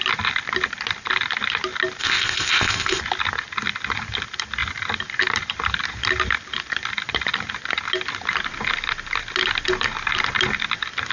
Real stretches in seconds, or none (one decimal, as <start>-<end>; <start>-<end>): 0.0-2.0; 3.0-11.1